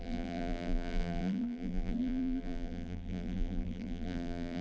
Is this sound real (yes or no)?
no